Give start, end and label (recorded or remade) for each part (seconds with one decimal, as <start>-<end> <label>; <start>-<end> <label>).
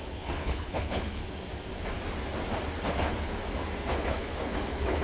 0.0-1.2 remade; 1.2-2.9 recorded; 2.9-3.4 remade; 3.4-3.9 recorded; 3.9-5.0 remade